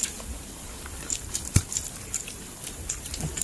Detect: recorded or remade remade